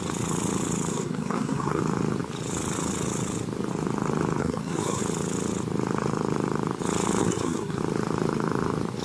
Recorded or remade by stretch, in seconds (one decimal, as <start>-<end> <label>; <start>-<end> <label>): 0.0-0.9 recorded; 0.9-1.8 remade; 1.8-4.4 recorded; 4.4-5.0 remade; 5.0-7.2 recorded; 7.2-7.8 remade; 7.8-9.0 recorded